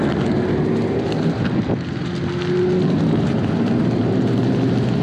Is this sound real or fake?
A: real